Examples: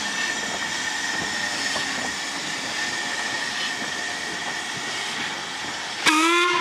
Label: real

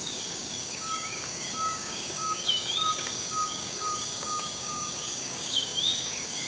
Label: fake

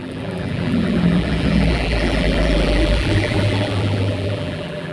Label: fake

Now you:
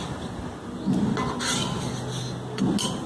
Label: real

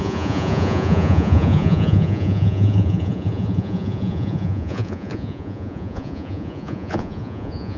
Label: fake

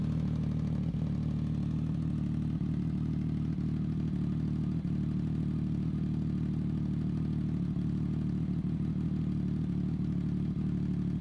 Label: real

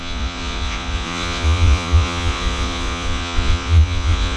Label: fake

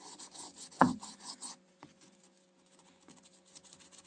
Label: fake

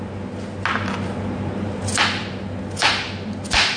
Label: real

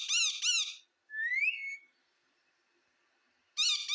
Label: real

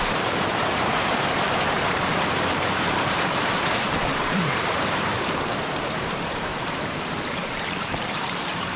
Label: fake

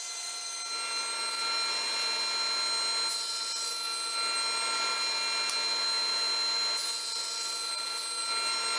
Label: real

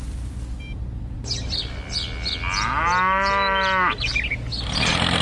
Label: real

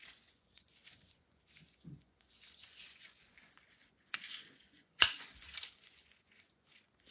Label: fake